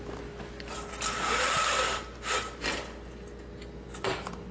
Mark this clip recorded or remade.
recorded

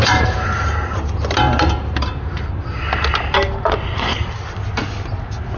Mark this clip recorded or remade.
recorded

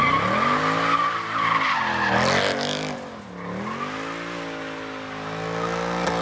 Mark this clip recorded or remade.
recorded